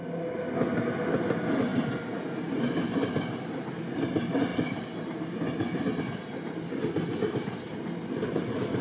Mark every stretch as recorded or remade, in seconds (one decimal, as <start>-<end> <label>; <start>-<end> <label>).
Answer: 0.0-8.8 recorded